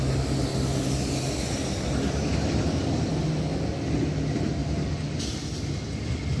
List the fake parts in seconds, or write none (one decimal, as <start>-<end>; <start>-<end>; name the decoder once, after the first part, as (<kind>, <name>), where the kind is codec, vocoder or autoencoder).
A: none

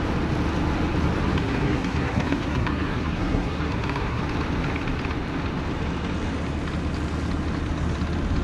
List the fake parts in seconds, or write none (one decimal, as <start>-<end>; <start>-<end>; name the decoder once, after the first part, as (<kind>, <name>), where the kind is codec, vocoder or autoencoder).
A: 1.3-4.2 (codec, SNAC)

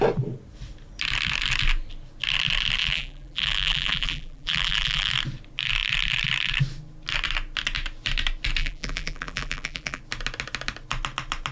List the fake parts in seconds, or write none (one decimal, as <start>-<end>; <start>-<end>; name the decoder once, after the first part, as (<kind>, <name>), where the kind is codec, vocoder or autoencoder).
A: 2.8-5.1 (vocoder, BigVGAN v2); 8.6-10.0

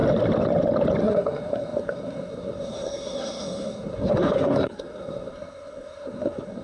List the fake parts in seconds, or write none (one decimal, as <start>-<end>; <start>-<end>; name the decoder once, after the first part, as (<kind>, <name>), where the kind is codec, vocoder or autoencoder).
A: 1.0-6.6 (codec, SNAC)

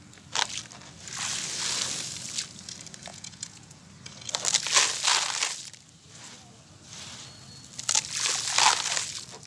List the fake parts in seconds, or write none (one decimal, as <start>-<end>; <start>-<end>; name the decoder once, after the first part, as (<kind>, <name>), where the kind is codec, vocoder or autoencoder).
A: 3.1-3.8 (vocoder, Vocos)

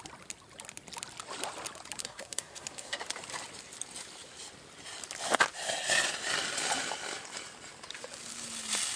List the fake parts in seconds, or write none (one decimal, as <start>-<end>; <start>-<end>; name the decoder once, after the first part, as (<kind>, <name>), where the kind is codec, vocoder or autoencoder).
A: 2.0-3.0 (codec, SNAC)

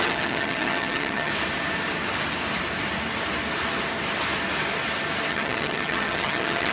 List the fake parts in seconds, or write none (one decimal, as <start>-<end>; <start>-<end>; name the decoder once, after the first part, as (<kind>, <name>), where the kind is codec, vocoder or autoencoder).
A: 0.0-1.3 (vocoder, HiFi-GAN); 5.3-6.7